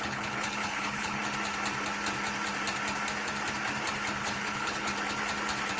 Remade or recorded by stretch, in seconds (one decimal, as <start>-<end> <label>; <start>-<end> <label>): 0.0-1.2 remade; 1.2-4.2 recorded; 4.2-4.9 remade; 4.9-5.8 recorded